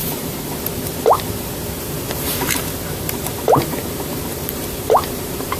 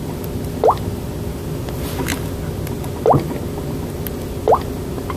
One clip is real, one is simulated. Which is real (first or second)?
second